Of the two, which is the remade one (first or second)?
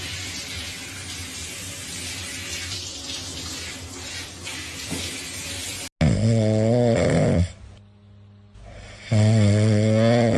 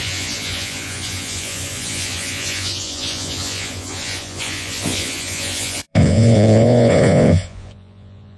second